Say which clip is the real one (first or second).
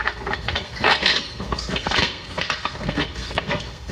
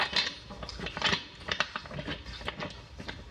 second